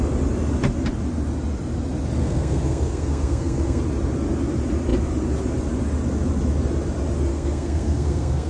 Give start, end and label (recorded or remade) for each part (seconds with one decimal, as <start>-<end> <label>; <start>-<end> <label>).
0.0-2.2 recorded; 2.2-3.8 remade; 3.8-7.3 recorded; 7.3-8.5 remade